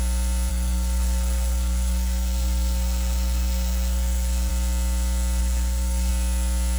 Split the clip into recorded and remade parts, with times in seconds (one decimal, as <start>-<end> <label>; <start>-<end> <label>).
0.0-0.5 recorded; 0.5-4.5 remade; 4.5-5.4 recorded; 5.4-6.1 remade; 6.1-6.8 recorded